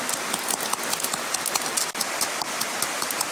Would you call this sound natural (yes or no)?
yes